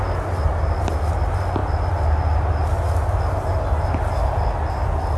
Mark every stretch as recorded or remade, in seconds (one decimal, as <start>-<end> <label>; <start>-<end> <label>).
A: 0.0-5.2 recorded